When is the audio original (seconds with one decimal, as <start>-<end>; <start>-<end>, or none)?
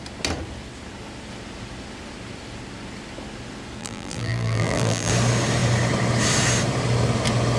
0.0-3.8; 5.1-7.6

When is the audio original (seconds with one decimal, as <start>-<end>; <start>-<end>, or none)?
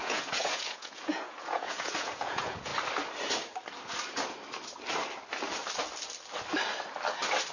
2.7-7.5